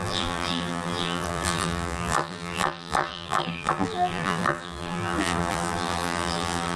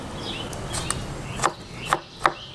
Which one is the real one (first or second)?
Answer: second